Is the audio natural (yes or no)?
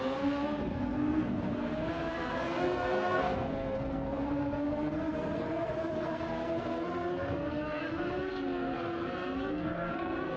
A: no